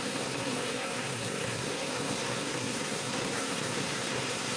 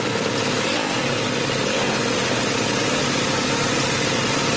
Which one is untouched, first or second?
second